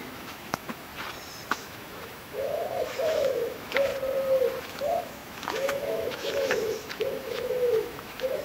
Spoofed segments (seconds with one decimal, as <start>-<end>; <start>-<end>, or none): 0.0-0.9; 1.5-3.9; 4.6-8.4